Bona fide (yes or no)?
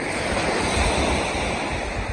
yes